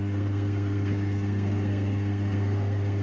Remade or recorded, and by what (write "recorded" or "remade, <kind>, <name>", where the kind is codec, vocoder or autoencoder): remade, codec, SNAC